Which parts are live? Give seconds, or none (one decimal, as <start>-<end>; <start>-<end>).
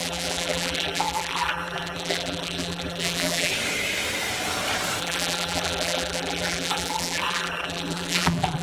3.5-5.0